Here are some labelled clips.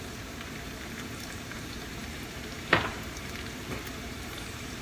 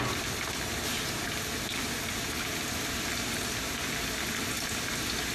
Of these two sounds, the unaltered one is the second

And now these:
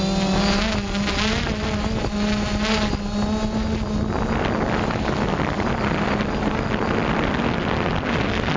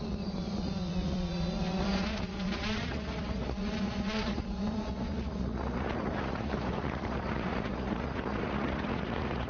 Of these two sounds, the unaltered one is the first